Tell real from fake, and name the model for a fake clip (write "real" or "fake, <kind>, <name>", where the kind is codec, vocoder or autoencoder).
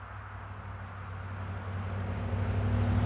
real